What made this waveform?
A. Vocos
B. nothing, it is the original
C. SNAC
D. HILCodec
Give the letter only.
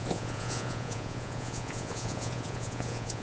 A